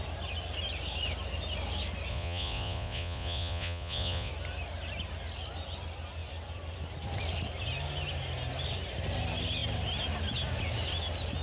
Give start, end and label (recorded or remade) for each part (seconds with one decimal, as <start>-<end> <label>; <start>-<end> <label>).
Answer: 0.0-2.1 recorded; 2.1-4.3 remade; 4.3-11.4 recorded